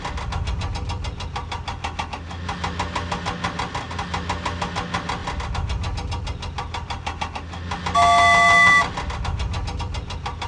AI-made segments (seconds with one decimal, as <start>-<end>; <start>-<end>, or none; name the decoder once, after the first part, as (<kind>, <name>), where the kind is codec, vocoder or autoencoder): none

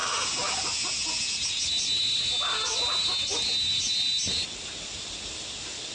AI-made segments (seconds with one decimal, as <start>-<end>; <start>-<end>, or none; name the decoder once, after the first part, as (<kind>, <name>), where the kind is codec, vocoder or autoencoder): none

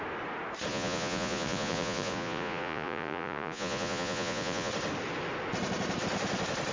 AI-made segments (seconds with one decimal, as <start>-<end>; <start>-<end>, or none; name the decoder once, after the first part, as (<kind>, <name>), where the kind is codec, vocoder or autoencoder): 0.7-4.7 (vocoder, Vocos)

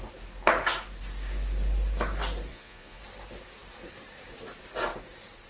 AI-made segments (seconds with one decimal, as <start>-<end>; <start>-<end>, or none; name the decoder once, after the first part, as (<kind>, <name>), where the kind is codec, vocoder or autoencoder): 2.5-3.0 (vocoder, Vocos)

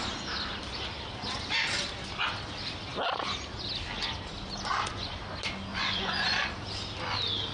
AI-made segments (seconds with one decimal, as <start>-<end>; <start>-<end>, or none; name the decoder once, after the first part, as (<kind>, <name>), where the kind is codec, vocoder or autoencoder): 4.7-5.2 (vocoder, Vocos); 5.7-6.5

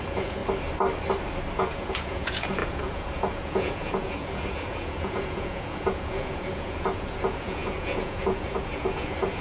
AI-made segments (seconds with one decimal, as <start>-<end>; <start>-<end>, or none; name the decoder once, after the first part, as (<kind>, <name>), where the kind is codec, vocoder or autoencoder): 0.0-0.4 (vocoder, Vocos); 1.6-9.4

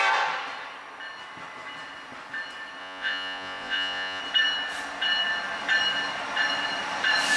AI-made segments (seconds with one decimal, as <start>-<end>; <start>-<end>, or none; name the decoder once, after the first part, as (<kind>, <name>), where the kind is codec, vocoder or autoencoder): 2.8-4.2 (vocoder, Vocos)

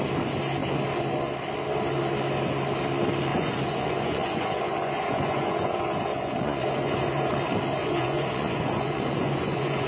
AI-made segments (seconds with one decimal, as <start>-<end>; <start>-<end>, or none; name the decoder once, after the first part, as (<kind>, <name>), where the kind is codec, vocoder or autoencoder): 3.3-7.3 (vocoder, Vocos); 7.8-9.9